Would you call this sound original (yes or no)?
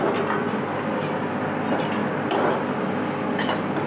yes